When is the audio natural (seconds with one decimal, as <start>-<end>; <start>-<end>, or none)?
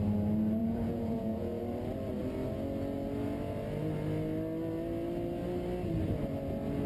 0.0-0.6; 1.6-6.9